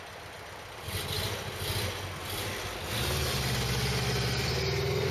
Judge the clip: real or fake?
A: real